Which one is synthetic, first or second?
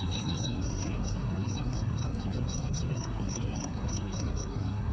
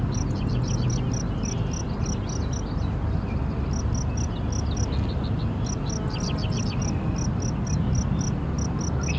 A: first